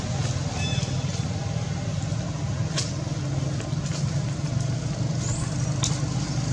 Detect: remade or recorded recorded